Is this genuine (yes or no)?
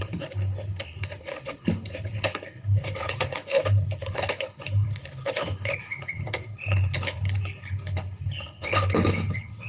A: no